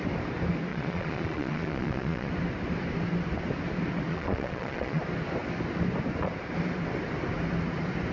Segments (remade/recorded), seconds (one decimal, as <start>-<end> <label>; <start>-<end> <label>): 0.0-0.7 recorded; 0.7-2.3 remade; 2.3-4.1 recorded; 4.1-5.0 remade; 5.0-8.1 recorded